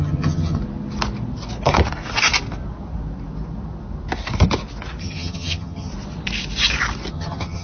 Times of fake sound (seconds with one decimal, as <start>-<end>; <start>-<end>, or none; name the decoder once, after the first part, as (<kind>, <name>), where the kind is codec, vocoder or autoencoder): 0.0-0.6 (vocoder, HiFi-GAN); 5.0-5.9; 7.1-7.6